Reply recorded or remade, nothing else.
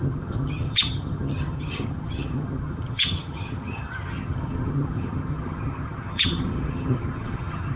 remade